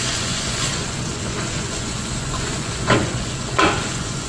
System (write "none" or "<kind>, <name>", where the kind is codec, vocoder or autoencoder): vocoder, Vocos